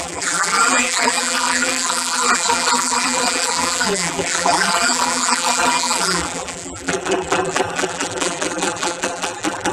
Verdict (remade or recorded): remade